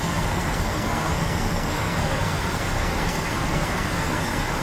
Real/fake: fake